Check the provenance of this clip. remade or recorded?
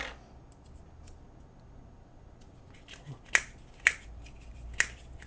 recorded